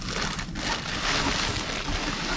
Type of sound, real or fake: real